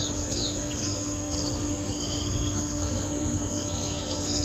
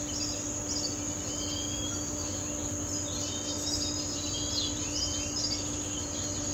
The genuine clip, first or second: second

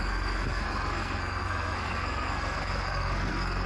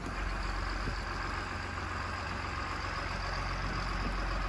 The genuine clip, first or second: second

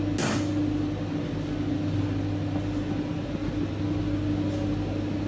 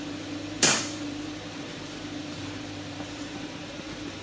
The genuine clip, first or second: first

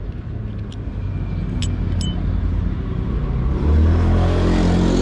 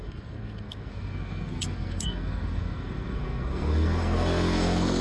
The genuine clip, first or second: first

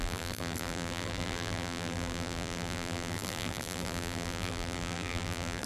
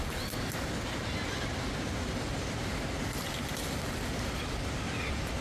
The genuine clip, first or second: second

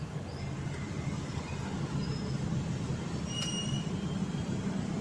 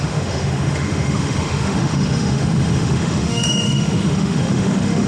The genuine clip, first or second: first